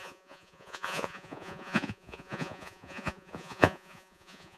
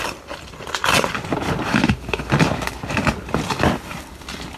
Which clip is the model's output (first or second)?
first